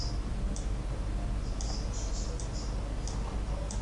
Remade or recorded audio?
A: recorded